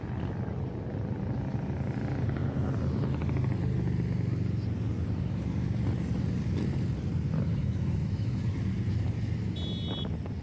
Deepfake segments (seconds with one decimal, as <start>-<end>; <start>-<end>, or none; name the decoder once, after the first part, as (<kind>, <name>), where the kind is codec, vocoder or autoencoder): 7.6-8.4 (autoencoder, DAC-VAE)